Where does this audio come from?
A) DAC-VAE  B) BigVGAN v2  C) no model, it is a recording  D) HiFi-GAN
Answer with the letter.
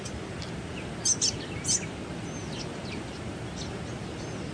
C